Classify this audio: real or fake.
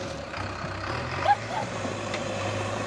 fake